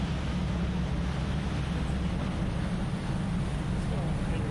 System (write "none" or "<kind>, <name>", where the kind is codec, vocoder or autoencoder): none